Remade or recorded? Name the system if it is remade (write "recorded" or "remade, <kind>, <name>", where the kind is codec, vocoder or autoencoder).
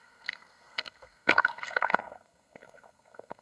remade, codec, SNAC